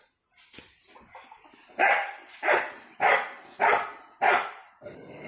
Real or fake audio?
fake